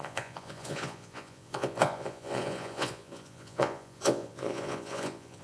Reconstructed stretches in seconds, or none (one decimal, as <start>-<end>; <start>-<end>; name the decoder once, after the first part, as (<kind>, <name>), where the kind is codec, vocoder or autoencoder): 0.0-5.4 (vocoder, Vocos)